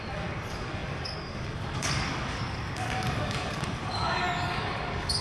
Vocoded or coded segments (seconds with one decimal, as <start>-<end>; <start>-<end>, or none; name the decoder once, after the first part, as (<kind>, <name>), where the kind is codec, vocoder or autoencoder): 0.0-5.2 (codec, DAC)